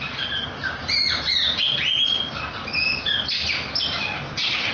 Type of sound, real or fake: real